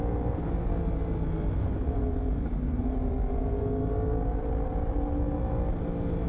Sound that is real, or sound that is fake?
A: real